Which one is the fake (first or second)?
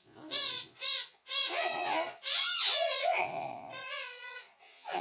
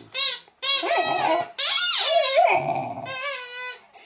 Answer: first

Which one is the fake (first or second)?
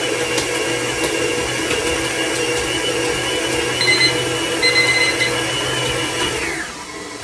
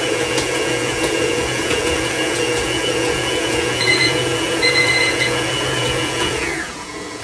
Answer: second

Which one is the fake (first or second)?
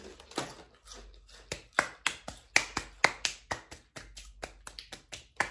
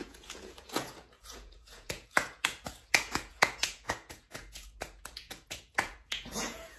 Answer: second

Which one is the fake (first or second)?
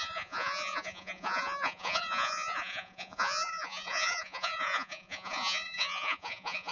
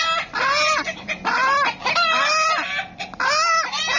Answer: first